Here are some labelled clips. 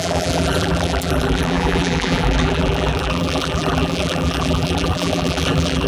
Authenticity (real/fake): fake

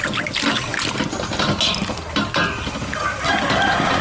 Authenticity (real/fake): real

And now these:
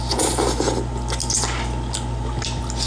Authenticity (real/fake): real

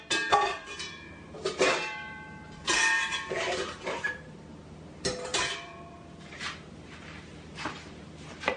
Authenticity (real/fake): fake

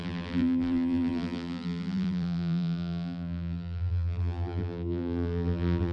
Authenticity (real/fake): fake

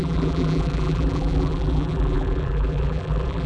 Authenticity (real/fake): fake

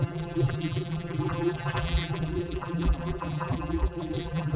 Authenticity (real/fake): fake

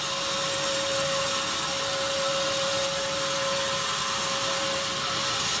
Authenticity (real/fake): real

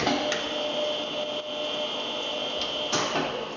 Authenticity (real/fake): real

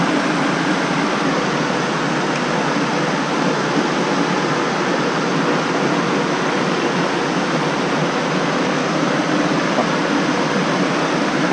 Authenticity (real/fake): real